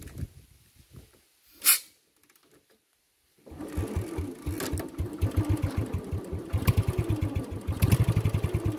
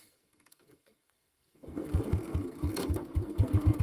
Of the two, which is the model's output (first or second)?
second